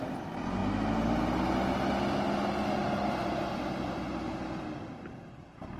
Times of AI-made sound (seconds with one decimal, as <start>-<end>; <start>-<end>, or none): 2.8-5.8